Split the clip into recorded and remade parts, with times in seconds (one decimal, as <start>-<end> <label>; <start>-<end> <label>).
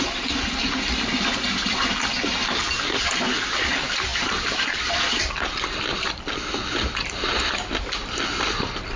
0.0-2.4 recorded; 2.4-3.2 remade; 3.2-4.1 recorded; 4.1-7.8 remade; 7.8-9.0 recorded